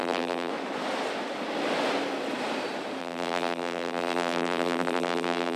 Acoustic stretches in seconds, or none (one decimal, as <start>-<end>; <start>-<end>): 0.5-3.0